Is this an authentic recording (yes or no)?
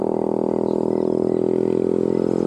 yes